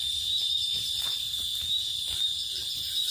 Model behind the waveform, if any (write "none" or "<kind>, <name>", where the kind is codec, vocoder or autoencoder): vocoder, BigVGAN v2